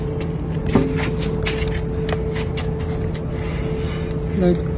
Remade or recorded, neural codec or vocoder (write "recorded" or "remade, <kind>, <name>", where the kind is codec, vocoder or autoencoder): recorded